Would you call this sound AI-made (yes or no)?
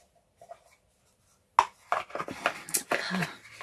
no